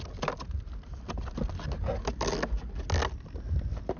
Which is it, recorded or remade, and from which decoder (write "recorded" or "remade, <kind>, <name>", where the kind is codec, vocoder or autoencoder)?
recorded